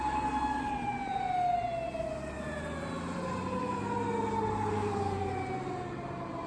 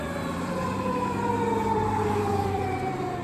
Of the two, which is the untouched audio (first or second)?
first